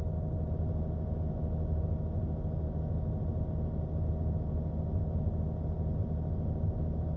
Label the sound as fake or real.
real